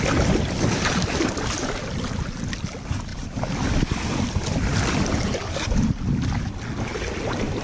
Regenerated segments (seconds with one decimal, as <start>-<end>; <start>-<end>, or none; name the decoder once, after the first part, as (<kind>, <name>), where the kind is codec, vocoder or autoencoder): 3.1-5.7 (vocoder, BigVGAN v2)